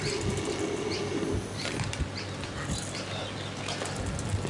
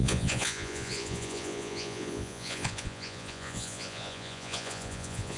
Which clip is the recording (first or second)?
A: first